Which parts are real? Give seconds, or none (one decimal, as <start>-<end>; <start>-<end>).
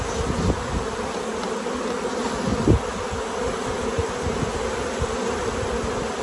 0.0-6.2